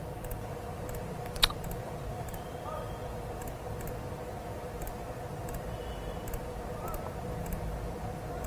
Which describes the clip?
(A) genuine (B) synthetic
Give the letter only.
A